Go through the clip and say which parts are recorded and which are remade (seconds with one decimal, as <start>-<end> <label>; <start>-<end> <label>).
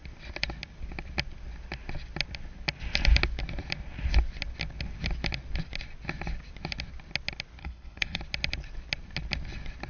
0.0-7.6 recorded; 7.6-8.2 remade; 8.2-9.9 recorded